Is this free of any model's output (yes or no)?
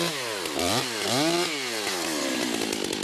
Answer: yes